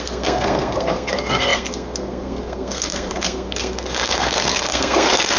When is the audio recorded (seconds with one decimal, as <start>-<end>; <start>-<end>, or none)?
none